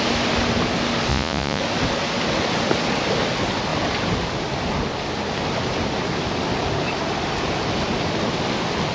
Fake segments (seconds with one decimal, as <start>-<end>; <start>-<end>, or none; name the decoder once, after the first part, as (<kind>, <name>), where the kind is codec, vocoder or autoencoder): 1.1-1.6 (vocoder, Vocos)